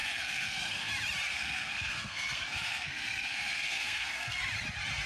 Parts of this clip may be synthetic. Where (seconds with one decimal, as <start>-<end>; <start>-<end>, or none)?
0.0-0.9; 1.3-4.4